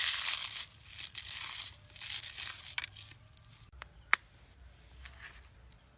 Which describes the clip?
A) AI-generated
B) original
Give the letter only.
B